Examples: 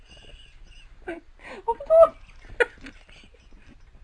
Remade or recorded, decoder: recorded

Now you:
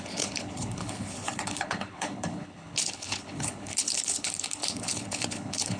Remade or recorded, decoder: remade, codec, HILCodec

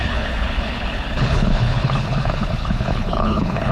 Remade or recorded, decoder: remade, codec, HILCodec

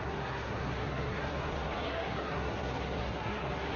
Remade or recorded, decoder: remade, codec, SNAC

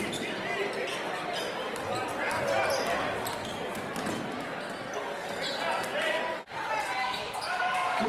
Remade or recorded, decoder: recorded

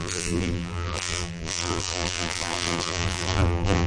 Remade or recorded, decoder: remade, vocoder, BigVGAN v2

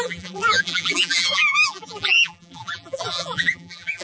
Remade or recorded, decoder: remade, vocoder, BigVGAN v2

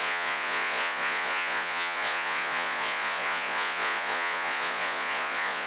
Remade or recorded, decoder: remade, vocoder, Vocos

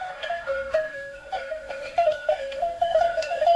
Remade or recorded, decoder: remade, autoencoder, DAC-VAE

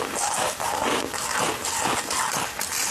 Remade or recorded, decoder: recorded